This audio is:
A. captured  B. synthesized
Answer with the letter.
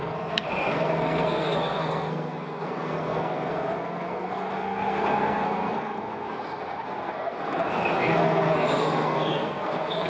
B